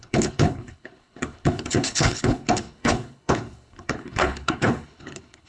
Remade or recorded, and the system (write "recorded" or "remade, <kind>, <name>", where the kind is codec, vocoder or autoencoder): remade, codec, HILCodec